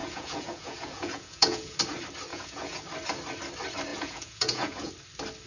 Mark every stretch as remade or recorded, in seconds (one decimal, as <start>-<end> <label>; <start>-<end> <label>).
0.0-1.8 remade; 1.8-2.3 recorded; 2.3-2.8 remade; 2.8-3.9 recorded; 3.9-4.9 remade; 4.9-5.5 recorded